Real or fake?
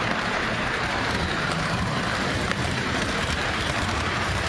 fake